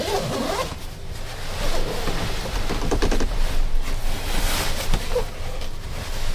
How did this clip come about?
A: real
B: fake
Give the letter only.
A